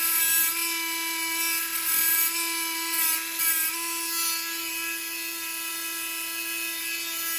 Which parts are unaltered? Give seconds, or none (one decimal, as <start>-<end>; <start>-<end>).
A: 0.0-7.4